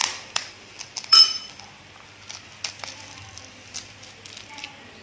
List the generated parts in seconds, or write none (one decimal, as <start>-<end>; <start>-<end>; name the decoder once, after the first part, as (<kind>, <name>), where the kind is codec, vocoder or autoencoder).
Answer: 0.0-1.7 (vocoder, BigVGAN v2)